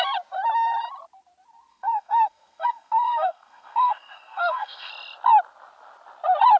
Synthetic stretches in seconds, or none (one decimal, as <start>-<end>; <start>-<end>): 1.7-4.9